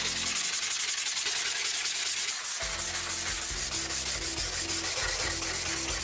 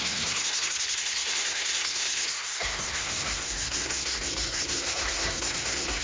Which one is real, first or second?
first